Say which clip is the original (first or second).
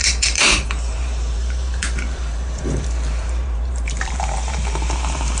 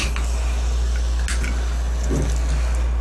second